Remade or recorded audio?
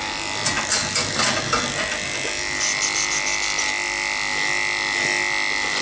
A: recorded